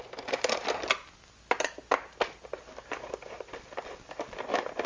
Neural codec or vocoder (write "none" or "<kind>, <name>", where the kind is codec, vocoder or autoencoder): none